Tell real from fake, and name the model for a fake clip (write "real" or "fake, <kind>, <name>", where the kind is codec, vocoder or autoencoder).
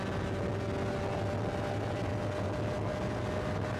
real